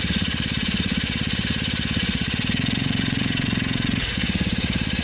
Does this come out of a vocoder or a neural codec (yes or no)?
yes